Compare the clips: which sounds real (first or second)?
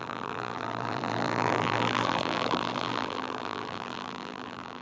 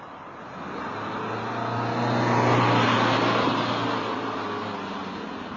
second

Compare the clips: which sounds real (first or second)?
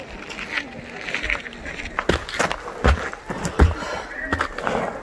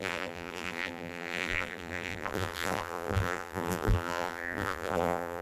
first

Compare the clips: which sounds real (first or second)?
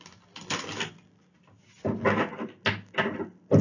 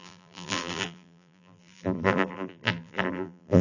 first